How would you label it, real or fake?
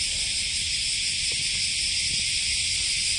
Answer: real